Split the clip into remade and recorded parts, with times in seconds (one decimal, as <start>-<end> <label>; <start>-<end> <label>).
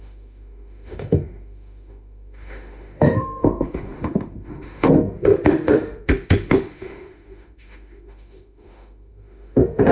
0.0-9.9 remade